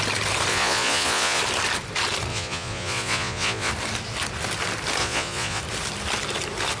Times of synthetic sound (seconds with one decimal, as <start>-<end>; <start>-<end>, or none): 0.5-1.4; 2.3-3.7; 5.0-5.6